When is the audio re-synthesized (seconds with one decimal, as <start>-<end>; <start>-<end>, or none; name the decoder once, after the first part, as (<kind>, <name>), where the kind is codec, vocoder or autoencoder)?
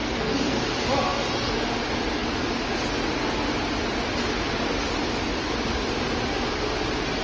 0.0-0.6 (codec, SNAC)